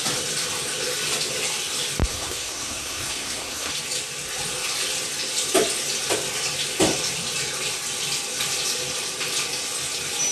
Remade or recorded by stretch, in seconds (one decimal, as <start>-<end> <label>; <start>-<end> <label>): 0.0-2.1 recorded; 2.1-3.7 remade; 3.7-10.3 recorded

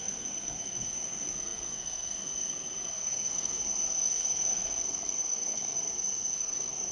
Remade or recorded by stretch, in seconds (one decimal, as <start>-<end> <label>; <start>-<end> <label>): 0.0-6.9 remade